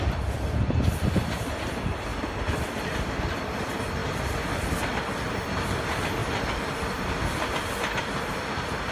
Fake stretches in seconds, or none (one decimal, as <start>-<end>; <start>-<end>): 6.2-6.9